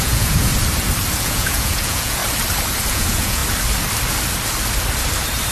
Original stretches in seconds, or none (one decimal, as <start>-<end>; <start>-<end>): 0.5-1.2; 2.2-2.9; 3.4-5.5